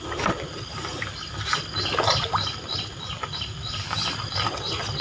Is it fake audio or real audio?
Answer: real